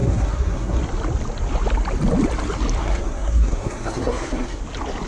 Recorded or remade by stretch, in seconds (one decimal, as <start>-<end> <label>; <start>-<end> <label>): 0.0-0.8 remade; 0.8-2.8 recorded; 2.8-4.6 remade; 4.6-5.1 recorded